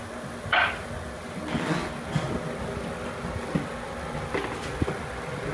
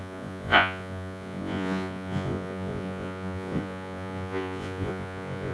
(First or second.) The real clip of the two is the first